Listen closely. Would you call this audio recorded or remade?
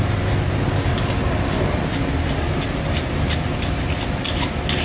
recorded